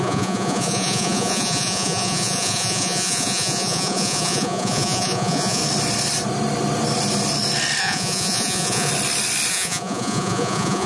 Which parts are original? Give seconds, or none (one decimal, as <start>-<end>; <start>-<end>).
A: 5.6-7.8; 8.9-9.5